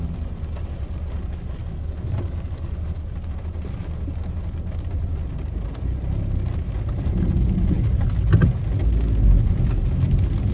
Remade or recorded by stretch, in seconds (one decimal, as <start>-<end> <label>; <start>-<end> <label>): 0.0-1.6 recorded; 1.6-3.1 remade; 3.1-10.5 recorded